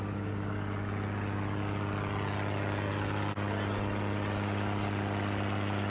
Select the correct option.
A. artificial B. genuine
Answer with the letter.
B